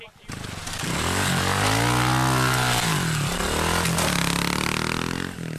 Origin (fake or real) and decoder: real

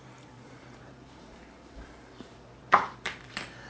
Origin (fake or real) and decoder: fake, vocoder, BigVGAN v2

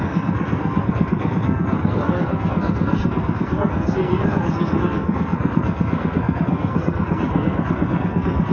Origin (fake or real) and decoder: fake, codec, SNAC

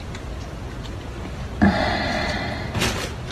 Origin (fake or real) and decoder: real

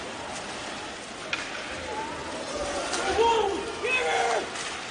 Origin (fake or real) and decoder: real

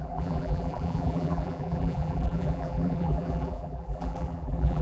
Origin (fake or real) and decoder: fake, vocoder, BigVGAN v2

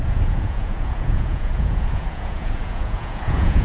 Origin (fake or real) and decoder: fake, vocoder, Vocos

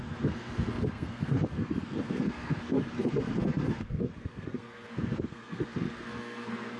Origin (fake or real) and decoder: fake, codec, SNAC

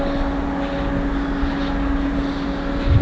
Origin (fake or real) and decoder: real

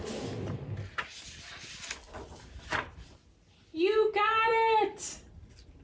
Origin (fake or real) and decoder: real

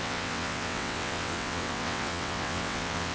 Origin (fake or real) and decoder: fake, vocoder, WaveNeXt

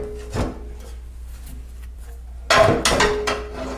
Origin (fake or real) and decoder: real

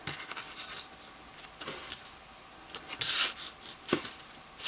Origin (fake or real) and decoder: real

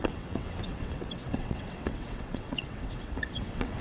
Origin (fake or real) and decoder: fake, vocoder, WaveNeXt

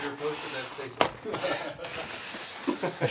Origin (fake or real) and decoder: real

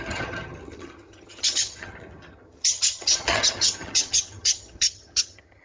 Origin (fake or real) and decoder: fake, vocoder, HiFi-GAN